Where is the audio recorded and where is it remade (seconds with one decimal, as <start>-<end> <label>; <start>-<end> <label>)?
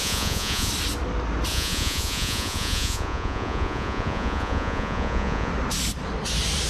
0.0-0.7 remade; 0.7-1.5 recorded; 1.5-5.5 remade; 5.5-6.7 recorded